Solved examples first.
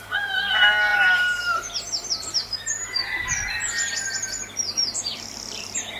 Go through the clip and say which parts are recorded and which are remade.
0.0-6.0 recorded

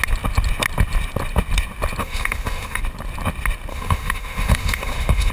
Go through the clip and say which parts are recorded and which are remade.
0.0-2.0 recorded; 2.0-2.8 remade; 2.8-3.7 recorded; 3.7-5.3 remade

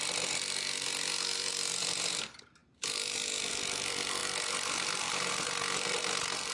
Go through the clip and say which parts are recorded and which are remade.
0.0-6.5 recorded

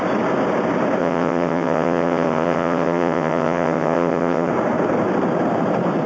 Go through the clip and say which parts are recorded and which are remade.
0.0-1.0 recorded; 1.0-4.5 remade; 4.5-6.1 recorded

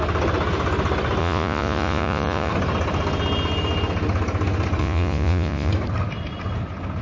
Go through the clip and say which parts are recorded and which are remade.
0.0-1.2 recorded; 1.2-2.5 remade; 2.5-4.8 recorded; 4.8-5.7 remade; 5.7-7.0 recorded

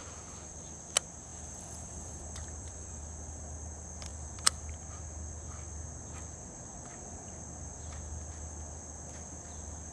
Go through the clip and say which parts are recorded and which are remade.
0.0-1.3 recorded; 1.3-3.0 remade; 3.0-4.1 recorded; 4.1-4.6 remade; 4.6-9.9 recorded

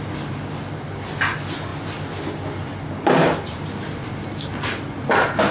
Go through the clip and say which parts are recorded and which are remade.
0.0-5.5 recorded